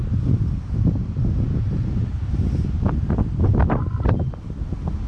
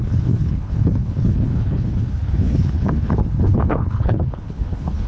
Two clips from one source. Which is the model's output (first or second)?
second